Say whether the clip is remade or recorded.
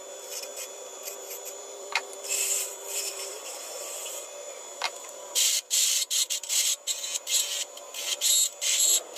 remade